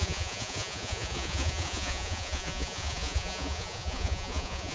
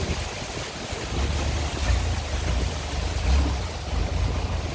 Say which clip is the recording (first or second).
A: second